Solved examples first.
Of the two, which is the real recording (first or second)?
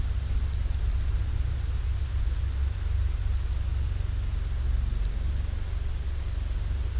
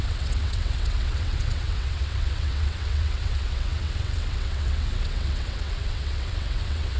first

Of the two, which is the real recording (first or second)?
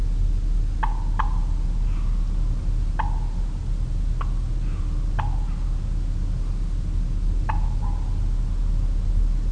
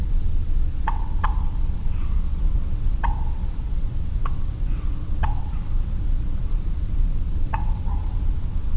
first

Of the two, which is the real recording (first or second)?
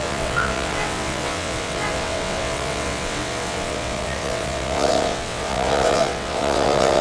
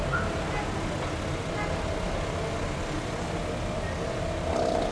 second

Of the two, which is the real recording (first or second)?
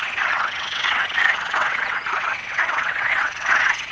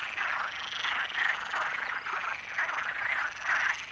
second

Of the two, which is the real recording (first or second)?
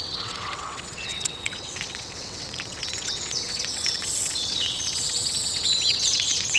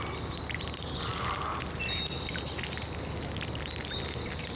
second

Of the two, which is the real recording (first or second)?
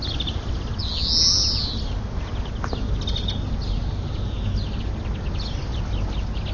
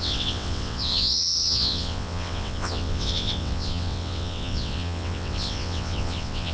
first